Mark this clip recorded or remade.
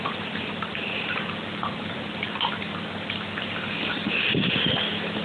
recorded